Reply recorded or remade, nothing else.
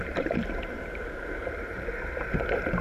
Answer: remade